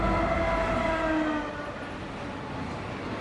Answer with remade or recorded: recorded